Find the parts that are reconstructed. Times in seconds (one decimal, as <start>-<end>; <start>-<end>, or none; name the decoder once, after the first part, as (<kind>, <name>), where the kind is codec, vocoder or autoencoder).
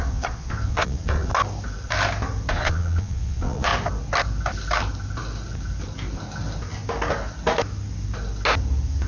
0.0-1.3 (vocoder, Vocos); 2.5-3.7